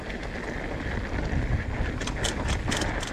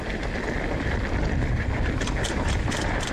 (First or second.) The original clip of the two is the first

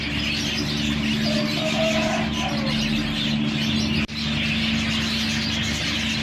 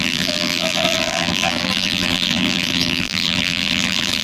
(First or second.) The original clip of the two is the first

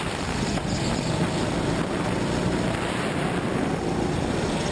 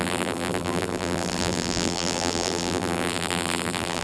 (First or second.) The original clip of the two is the first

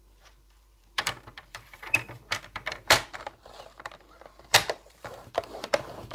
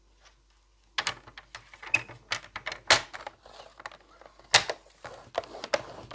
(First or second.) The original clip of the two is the second